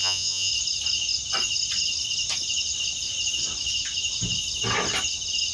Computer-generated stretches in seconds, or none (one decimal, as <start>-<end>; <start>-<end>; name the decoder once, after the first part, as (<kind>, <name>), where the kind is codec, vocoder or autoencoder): 0.0-0.5 (vocoder, Vocos)